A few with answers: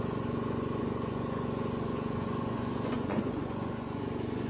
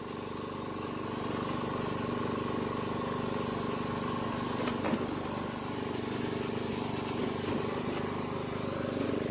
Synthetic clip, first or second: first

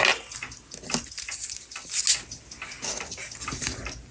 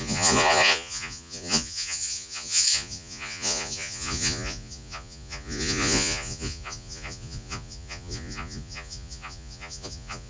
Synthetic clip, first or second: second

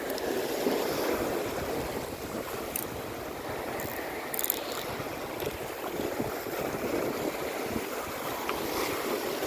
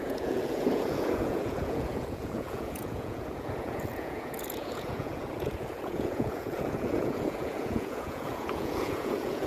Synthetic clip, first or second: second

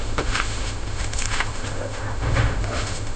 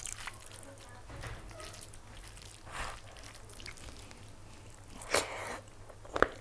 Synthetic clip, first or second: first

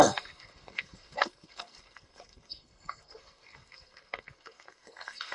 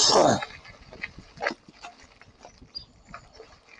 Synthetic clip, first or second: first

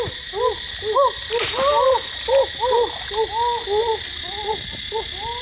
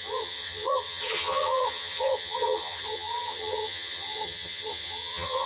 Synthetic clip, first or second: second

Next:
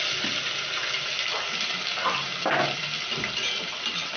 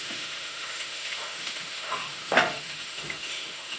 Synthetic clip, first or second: second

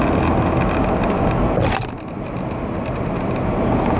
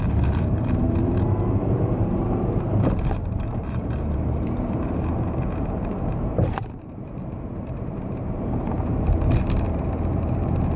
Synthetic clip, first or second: second